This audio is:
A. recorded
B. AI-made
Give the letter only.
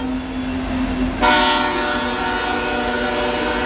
A